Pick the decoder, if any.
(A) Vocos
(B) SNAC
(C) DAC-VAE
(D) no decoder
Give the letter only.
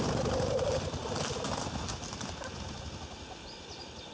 D